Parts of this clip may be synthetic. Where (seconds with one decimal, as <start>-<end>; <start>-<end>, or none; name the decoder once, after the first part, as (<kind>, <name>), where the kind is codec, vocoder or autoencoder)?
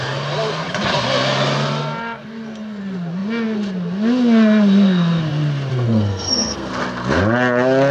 5.7-6.7 (codec, SNAC)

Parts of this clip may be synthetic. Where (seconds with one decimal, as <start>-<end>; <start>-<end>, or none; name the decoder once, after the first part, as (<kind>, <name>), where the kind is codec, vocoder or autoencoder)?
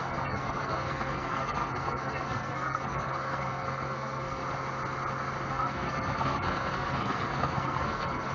0.0-4.4 (codec, SNAC); 5.5-8.3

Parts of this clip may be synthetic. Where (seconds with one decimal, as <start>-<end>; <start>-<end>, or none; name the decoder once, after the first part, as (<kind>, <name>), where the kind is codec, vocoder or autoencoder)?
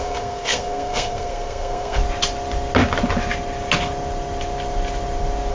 0.0-2.0 (codec, SNAC)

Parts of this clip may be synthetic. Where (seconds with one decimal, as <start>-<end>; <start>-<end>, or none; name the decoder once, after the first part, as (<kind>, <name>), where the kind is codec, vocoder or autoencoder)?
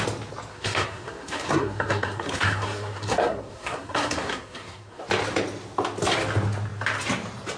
0.5-5.0 (codec, SNAC)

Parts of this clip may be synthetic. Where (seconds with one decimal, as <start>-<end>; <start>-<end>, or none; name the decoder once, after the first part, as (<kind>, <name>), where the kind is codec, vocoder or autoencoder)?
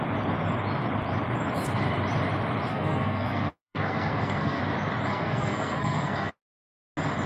2.7-4.6 (codec, SNAC); 5.1-6.3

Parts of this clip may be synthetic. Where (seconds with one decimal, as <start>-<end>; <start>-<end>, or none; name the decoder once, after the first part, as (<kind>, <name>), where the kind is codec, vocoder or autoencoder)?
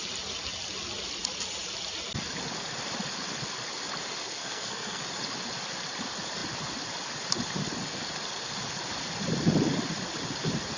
4.4-5.0 (codec, SNAC)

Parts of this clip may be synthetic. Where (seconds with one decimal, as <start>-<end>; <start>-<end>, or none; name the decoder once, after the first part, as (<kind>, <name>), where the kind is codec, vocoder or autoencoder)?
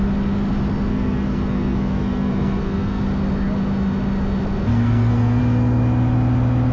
0.9-3.0 (codec, SNAC); 4.7-5.4